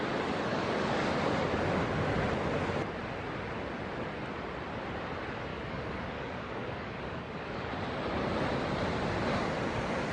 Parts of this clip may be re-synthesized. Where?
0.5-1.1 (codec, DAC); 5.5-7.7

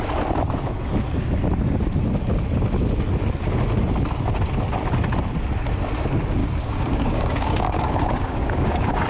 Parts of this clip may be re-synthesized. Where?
6.4-9.1 (codec, DAC)

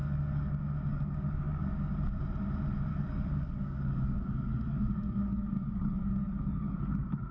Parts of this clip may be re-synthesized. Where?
0.0-0.5 (codec, DAC); 0.9-1.9; 2.9-7.3

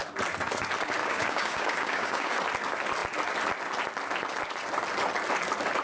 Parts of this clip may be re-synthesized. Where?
1.0-2.4 (codec, DAC)

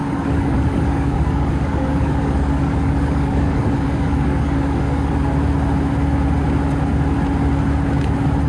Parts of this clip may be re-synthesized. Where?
0.0-5.1 (codec, DAC)

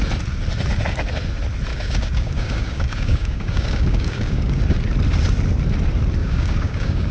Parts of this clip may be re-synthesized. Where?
1.7-4.6 (codec, DAC); 6.2-7.1

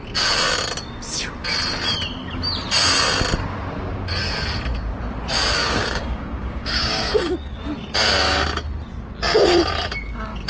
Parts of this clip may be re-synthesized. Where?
5.6-7.6 (codec, DAC)